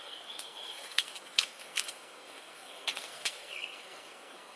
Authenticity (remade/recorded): remade